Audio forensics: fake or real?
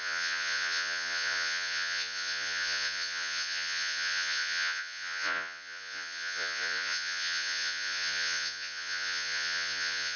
fake